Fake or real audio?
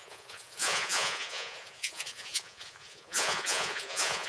fake